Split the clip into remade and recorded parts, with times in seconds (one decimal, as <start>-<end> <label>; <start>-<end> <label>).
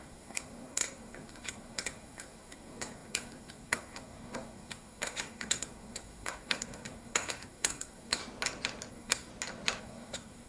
0.0-8.2 remade; 8.2-8.9 recorded; 8.9-9.3 remade; 9.3-9.8 recorded; 9.8-10.5 remade